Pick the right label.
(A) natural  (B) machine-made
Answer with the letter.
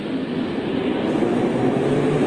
A